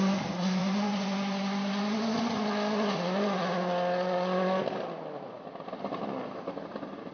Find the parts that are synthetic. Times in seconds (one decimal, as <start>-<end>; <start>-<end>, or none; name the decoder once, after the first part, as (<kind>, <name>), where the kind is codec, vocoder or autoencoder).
none